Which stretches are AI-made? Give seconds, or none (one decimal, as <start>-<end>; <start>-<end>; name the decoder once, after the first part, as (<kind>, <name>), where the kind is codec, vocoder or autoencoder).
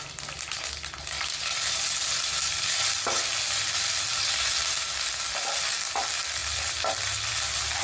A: 4.1-4.8 (vocoder, BigVGAN v2)